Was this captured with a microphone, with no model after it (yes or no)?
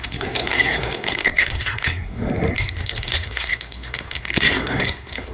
no